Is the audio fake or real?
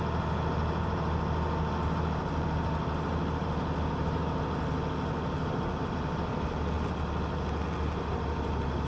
real